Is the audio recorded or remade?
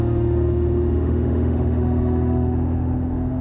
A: remade